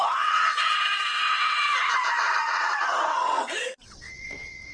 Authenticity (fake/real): fake